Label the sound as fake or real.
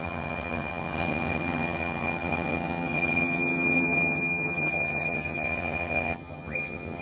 fake